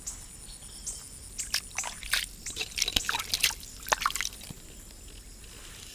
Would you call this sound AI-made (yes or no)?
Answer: no